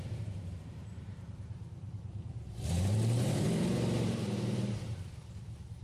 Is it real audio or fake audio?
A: fake